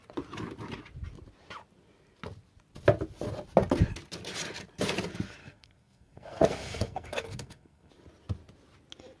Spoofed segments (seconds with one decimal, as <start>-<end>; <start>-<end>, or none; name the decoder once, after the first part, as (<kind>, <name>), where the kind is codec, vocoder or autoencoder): 5.4-7.9 (codec, SNAC)